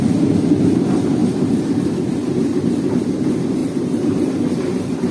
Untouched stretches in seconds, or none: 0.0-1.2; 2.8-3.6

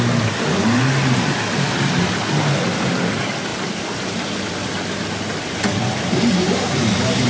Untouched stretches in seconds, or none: 0.0-3.5; 4.7-7.3

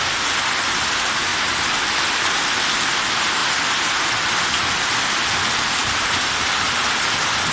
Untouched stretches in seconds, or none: 0.0-1.3; 2.6-5.8; 6.5-7.5

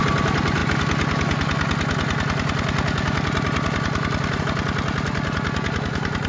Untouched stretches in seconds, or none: 0.0-6.3

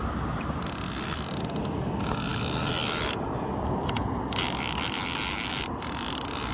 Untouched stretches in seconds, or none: 0.0-2.3; 4.0-6.5

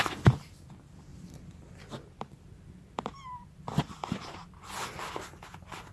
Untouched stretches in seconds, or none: 0.0-1.1; 4.6-5.9

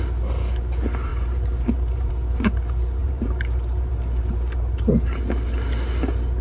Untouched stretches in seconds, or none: 0.0-1.1; 2.1-3.0; 3.9-6.4